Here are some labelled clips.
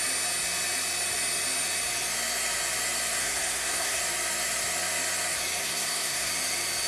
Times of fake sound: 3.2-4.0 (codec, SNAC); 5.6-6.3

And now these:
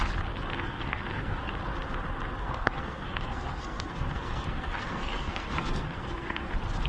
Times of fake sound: 0.5-1.5 (codec, SNAC); 2.4-6.5